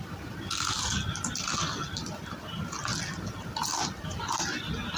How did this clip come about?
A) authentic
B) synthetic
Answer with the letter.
A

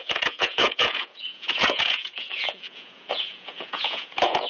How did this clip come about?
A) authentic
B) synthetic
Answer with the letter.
B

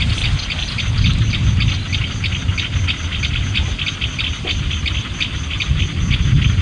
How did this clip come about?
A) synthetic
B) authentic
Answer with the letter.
B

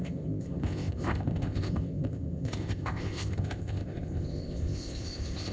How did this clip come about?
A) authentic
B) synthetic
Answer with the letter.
B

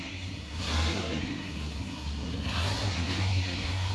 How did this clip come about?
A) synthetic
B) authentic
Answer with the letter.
A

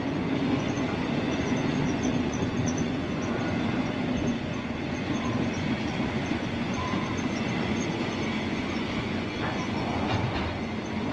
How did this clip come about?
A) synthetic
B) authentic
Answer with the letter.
A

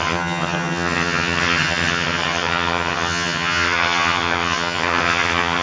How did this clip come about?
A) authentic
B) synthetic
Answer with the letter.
B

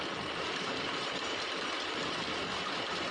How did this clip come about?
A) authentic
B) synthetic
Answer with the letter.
A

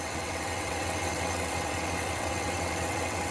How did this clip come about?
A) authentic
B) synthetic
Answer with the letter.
B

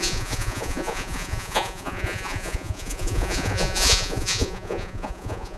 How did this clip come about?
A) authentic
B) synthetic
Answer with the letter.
B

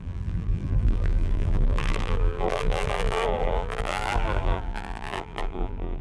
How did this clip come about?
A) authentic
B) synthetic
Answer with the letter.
B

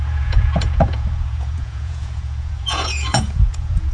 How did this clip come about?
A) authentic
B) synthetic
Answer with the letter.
B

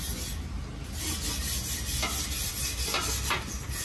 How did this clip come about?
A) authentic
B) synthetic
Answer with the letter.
A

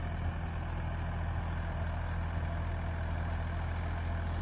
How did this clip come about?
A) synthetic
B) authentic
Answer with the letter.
B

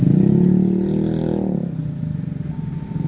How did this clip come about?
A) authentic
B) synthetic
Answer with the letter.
A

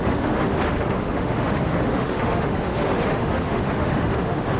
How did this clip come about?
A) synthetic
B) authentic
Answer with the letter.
A